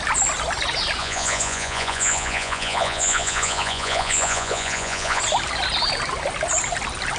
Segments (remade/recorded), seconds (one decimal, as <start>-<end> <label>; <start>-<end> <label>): 0.0-1.0 recorded; 1.0-5.2 remade; 5.2-7.2 recorded